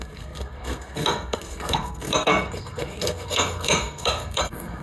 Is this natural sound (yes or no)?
no